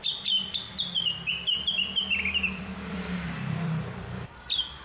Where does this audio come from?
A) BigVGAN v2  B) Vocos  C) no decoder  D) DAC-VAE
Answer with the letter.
A